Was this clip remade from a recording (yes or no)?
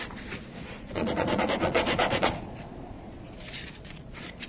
yes